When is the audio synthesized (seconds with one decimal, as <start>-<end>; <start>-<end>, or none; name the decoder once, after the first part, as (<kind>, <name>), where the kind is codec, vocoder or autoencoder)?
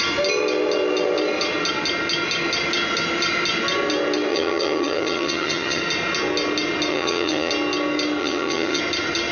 4.3-5.8 (vocoder, HiFi-GAN); 6.9-7.5; 8.2-8.8